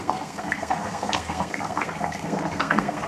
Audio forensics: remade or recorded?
remade